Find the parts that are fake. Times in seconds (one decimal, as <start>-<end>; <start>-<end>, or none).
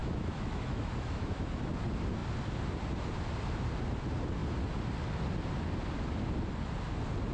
0.0-1.7